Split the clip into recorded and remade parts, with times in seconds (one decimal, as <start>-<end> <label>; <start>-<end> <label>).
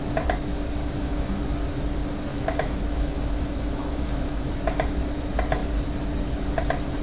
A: 0.0-0.8 recorded; 0.8-1.4 remade; 1.4-2.3 recorded; 2.3-4.5 remade; 4.5-7.0 recorded